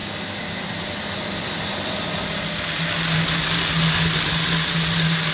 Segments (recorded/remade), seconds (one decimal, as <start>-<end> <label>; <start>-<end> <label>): 0.0-5.3 recorded